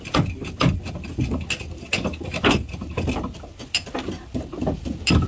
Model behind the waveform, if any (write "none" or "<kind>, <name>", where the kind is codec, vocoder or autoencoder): none